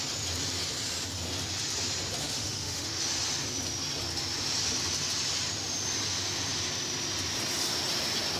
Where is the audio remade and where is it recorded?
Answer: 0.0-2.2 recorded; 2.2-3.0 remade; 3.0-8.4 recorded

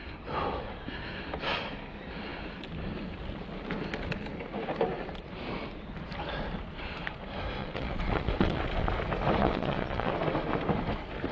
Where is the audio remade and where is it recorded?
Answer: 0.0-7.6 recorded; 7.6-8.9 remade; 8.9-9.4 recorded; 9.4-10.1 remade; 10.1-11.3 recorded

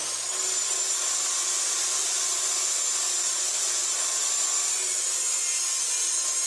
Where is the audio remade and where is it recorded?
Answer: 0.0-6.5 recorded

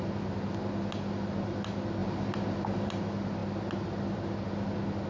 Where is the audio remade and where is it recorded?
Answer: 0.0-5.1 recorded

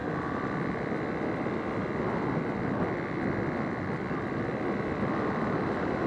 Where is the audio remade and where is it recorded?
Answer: 0.0-6.1 recorded